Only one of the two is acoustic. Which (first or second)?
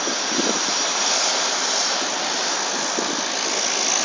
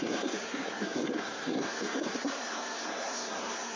first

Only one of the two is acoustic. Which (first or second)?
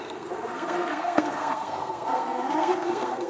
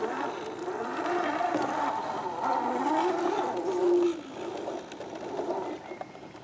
second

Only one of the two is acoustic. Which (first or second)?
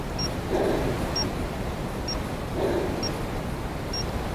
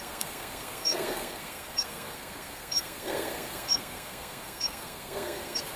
first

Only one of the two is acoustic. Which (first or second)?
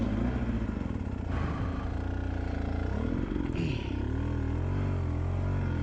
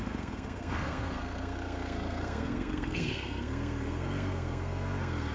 first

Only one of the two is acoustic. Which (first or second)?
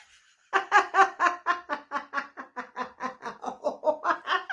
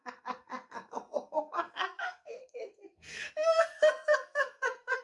first